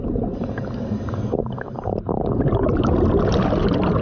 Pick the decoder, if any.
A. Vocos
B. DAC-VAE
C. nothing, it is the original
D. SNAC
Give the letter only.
C